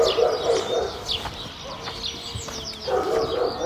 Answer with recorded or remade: recorded